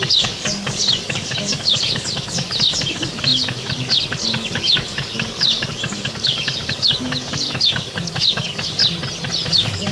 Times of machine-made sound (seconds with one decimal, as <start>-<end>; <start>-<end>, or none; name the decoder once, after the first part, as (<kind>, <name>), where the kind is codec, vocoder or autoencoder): 0.0-8.8 (codec, DAC); 9.5-9.9